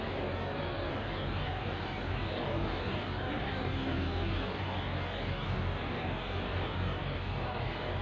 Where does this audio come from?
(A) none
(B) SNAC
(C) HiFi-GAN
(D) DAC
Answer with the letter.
D